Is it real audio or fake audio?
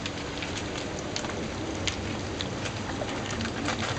real